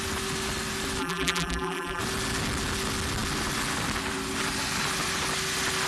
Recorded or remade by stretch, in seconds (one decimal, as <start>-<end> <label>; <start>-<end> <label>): 0.0-1.0 recorded; 1.0-2.0 remade; 2.0-5.9 recorded